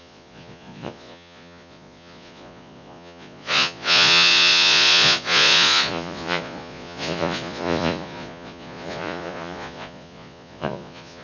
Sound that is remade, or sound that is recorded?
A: remade